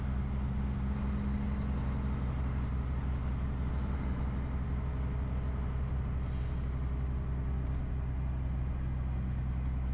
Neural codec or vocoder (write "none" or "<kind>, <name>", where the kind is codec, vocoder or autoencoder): none